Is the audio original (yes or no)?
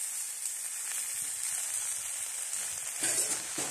yes